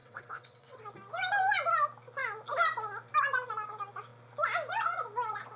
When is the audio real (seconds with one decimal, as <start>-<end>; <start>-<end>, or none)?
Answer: 0.8-5.6